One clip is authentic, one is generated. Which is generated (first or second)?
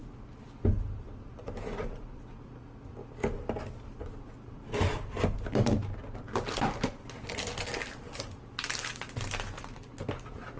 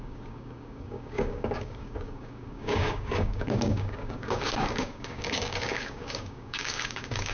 second